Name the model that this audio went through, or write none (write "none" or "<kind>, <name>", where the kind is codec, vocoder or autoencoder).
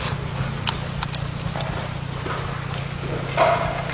none